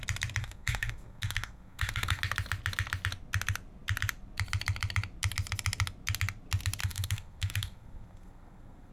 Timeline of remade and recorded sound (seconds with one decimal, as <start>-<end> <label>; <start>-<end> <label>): 0.0-0.4 recorded; 0.4-2.2 remade; 2.2-6.8 recorded; 6.8-8.9 remade